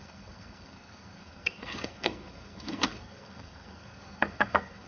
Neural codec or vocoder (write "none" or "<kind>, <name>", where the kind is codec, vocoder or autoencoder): codec, SNAC